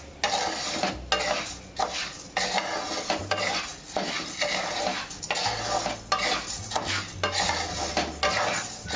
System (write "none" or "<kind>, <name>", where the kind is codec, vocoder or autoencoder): none